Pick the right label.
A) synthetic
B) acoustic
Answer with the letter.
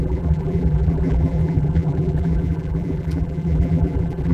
A